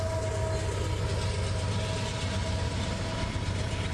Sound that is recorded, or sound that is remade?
recorded